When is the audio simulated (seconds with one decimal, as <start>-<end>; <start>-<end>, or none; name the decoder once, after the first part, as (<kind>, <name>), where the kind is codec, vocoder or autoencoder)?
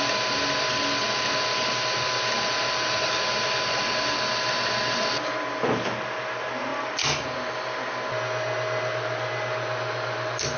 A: none